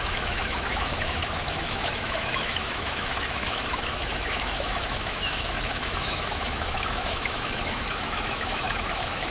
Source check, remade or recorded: remade